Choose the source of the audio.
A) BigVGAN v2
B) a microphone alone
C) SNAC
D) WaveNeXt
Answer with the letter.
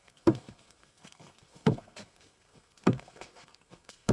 C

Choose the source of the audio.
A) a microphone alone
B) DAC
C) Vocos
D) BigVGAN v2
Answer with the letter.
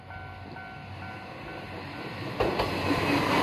A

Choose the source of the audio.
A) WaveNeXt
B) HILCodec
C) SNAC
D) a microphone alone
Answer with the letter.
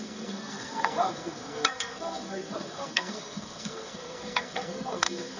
C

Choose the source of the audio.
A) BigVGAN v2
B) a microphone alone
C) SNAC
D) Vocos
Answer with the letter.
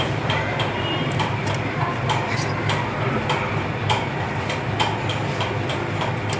A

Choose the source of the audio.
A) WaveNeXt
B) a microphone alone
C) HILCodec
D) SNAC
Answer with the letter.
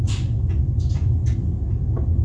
B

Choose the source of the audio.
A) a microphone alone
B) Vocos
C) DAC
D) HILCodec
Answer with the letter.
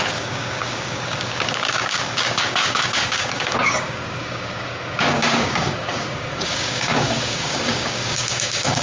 C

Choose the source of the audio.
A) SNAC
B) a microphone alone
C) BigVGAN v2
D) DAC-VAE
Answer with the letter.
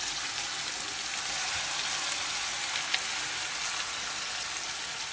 B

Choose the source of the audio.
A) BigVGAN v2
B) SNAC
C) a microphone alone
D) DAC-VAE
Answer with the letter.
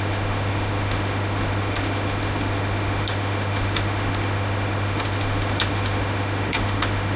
D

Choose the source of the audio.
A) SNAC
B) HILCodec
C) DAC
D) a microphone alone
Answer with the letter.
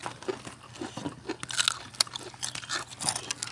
D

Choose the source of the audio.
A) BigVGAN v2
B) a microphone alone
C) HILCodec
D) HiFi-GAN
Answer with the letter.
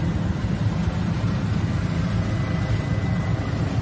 B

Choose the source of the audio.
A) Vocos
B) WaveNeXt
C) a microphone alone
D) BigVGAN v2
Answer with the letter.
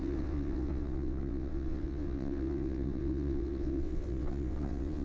B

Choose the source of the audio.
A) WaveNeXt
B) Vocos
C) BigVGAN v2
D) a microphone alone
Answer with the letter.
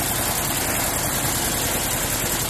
D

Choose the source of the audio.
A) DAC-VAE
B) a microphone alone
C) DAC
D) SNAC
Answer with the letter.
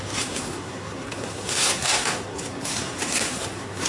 D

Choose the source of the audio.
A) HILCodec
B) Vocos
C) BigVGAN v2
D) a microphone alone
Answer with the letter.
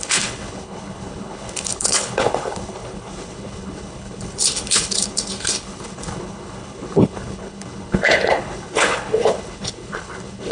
A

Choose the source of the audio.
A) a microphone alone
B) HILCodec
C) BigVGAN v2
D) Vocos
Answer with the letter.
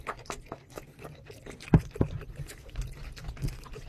A